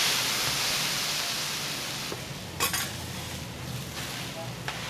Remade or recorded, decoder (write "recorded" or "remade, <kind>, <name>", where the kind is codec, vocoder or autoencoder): recorded